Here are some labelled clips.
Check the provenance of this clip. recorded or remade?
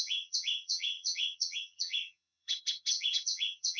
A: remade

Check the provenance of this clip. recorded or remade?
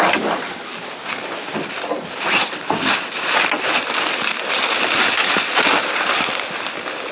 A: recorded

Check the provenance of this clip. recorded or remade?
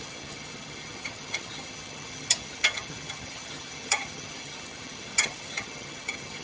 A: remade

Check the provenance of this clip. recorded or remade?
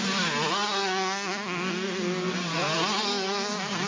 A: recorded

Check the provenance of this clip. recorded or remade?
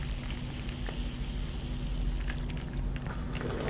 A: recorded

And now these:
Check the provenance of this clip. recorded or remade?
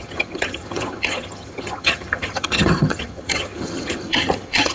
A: remade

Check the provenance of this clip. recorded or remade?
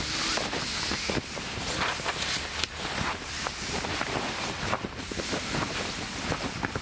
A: recorded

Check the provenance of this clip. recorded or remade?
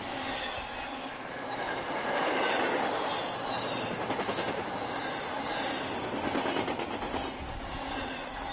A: recorded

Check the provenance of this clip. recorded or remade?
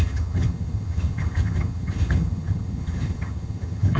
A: remade